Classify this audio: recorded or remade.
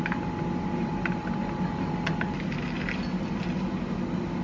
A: recorded